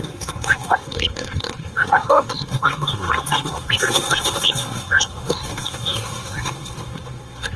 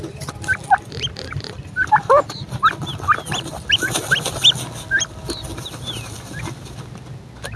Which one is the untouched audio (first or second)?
second